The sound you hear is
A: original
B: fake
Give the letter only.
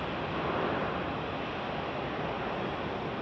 A